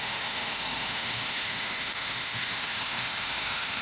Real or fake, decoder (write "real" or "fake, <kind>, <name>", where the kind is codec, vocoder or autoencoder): fake, autoencoder, DAC-VAE